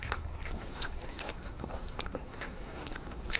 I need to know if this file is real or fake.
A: fake